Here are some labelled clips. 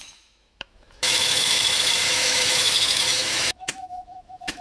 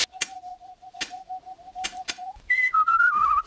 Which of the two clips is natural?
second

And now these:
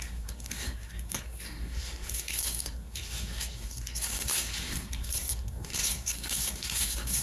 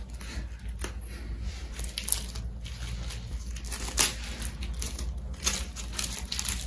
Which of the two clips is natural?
second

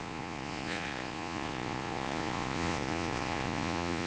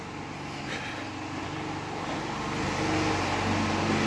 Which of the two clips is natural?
second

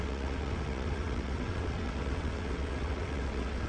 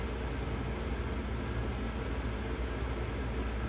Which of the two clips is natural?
second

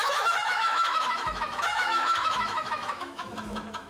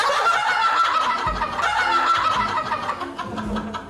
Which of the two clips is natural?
second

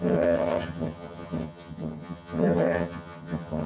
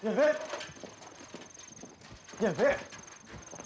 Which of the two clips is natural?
second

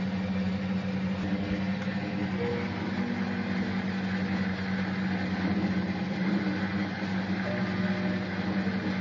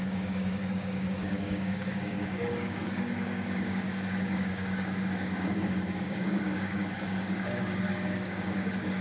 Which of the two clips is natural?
first